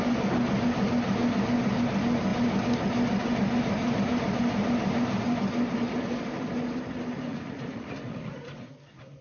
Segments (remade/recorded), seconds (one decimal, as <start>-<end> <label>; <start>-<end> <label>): 0.0-7.3 recorded; 7.3-8.7 remade; 8.7-9.2 recorded